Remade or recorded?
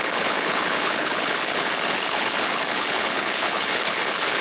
remade